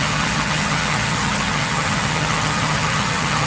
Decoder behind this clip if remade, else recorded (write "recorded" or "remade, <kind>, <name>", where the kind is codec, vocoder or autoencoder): remade, vocoder, HiFi-GAN